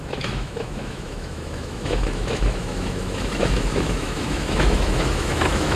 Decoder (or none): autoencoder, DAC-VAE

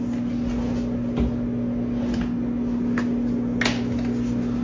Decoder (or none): none